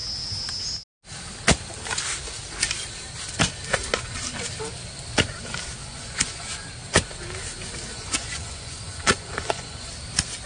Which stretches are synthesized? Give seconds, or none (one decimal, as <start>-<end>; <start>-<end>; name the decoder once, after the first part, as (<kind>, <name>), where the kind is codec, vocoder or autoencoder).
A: 5.8-6.7 (vocoder, Vocos); 7.9-9.9